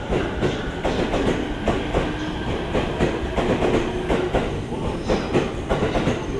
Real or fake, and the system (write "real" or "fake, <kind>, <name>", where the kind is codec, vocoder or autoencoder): real